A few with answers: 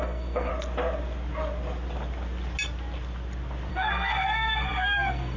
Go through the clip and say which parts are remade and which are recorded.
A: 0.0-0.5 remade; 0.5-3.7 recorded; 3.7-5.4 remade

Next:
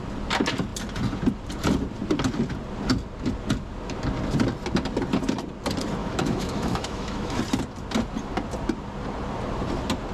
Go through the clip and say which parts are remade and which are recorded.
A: 0.0-6.0 recorded; 6.0-7.4 remade; 7.4-10.1 recorded

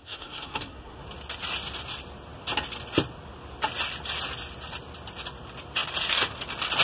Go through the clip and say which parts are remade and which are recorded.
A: 0.0-1.0 remade; 1.0-6.8 recorded

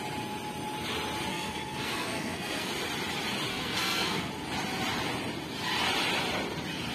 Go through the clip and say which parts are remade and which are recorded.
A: 0.0-1.3 recorded; 1.3-2.7 remade; 2.7-3.5 recorded; 3.5-4.3 remade; 4.3-6.9 recorded

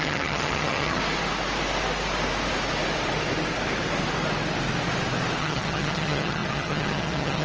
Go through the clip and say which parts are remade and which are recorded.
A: 0.0-1.0 remade; 1.0-5.4 recorded; 5.4-7.4 remade

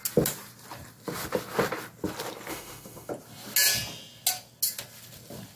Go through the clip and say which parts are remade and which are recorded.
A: 0.0-2.5 recorded; 2.5-3.1 remade; 3.1-5.6 recorded

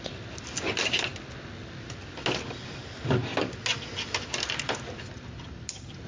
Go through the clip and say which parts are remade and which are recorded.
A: 0.0-6.1 recorded